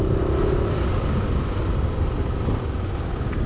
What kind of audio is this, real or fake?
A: real